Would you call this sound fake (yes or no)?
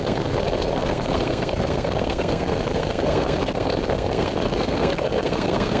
yes